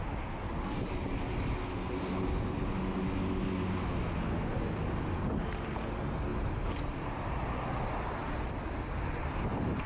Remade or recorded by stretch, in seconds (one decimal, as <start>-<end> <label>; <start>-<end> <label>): 0.0-6.3 recorded; 6.3-7.4 remade; 7.4-9.9 recorded